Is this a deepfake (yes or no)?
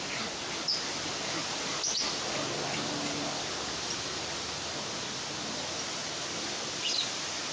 no